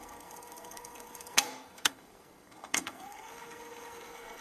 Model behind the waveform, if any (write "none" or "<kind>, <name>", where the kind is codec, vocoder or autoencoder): codec, SNAC